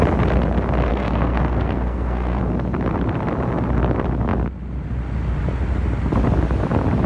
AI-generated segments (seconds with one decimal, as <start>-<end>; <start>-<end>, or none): 0.9-2.4